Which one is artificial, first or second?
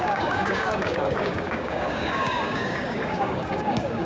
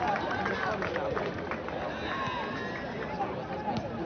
first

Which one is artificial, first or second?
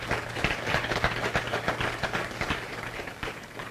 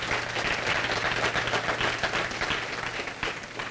first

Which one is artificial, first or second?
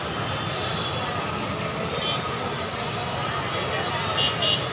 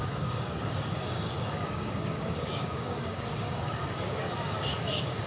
second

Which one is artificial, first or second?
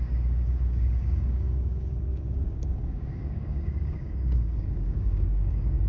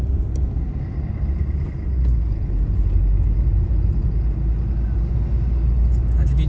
first